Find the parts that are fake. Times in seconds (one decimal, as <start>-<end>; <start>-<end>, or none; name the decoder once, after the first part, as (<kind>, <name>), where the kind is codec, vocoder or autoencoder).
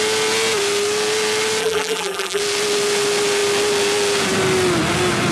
1.6-2.4 (vocoder, BigVGAN v2)